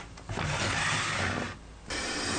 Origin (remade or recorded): recorded